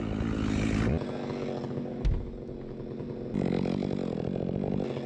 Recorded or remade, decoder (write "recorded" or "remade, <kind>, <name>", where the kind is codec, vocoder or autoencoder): recorded